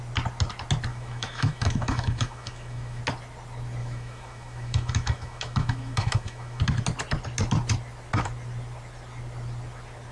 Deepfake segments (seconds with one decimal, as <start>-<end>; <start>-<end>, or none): 0.9-3.0; 3.8-6.6